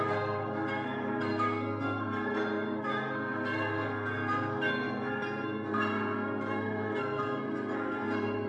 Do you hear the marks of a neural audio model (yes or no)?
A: yes